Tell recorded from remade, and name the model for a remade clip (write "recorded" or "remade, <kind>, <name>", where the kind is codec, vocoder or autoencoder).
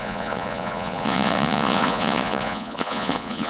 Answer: remade, vocoder, Vocos